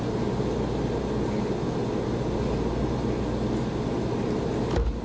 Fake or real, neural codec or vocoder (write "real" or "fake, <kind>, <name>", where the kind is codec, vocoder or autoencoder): real